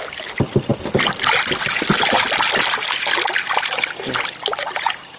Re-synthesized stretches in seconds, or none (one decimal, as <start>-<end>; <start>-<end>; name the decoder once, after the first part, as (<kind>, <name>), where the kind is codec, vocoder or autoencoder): none